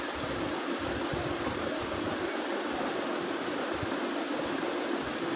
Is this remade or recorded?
recorded